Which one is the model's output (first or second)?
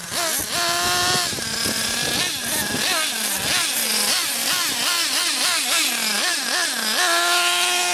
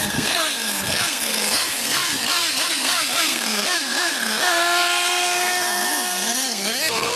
second